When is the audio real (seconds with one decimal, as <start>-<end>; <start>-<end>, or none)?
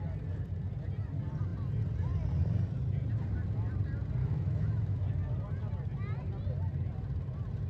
0.0-4.2; 5.0-7.7